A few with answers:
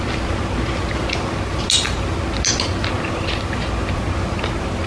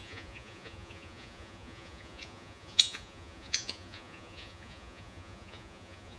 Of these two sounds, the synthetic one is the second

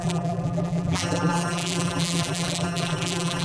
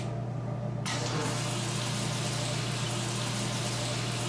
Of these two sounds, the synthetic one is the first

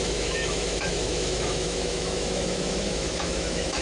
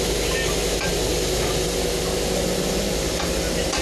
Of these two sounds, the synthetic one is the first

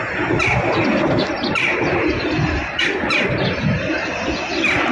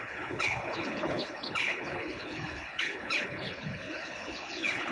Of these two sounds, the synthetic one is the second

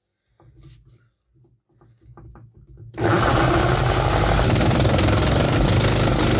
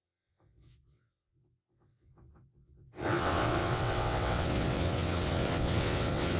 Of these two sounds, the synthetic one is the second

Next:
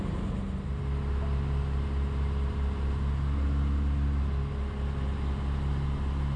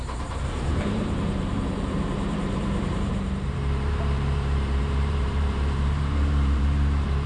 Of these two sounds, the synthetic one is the second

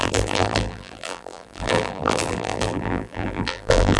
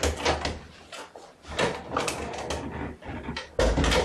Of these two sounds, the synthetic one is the first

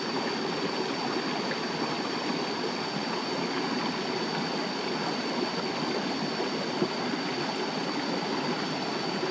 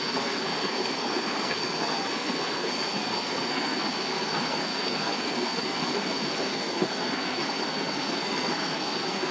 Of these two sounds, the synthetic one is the second